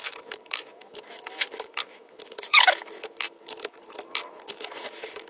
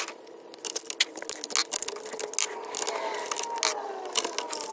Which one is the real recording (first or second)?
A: second